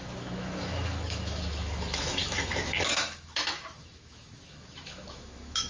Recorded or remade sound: remade